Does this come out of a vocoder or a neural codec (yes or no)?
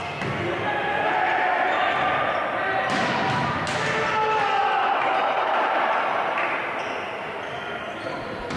no